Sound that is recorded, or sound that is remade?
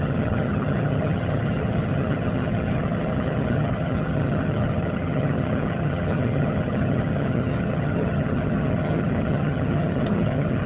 remade